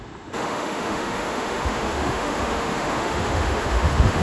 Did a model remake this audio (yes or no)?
yes